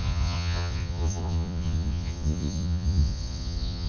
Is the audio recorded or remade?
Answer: remade